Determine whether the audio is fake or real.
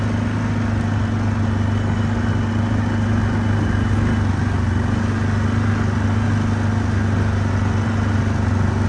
real